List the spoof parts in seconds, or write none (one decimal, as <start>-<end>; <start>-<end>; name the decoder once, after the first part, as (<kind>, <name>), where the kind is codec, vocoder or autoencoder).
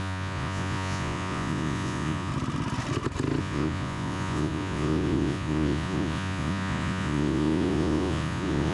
0.0-2.3 (vocoder, Vocos); 3.4-8.7